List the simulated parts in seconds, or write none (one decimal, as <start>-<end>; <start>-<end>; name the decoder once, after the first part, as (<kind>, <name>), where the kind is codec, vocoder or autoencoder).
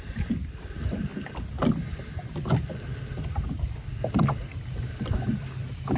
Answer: 0.0-1.1 (vocoder, BigVGAN v2); 4.7-6.0